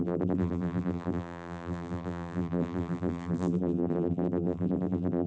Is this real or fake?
fake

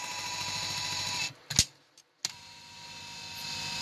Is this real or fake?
real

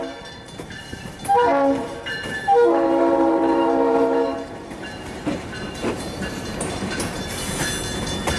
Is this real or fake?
fake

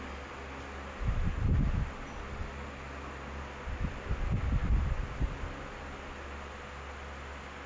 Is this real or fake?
real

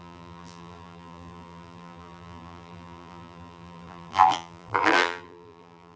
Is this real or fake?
fake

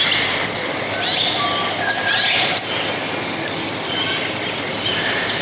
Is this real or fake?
real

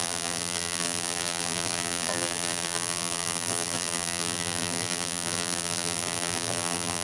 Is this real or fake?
fake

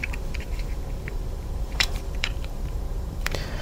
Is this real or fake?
fake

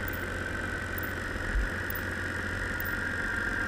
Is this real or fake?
real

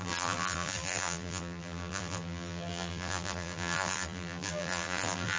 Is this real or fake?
fake